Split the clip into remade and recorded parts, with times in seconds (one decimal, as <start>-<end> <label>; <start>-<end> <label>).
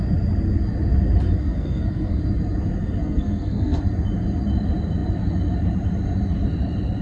0.0-1.4 recorded; 1.4-2.2 remade; 2.2-3.0 recorded; 3.0-3.8 remade; 3.8-7.0 recorded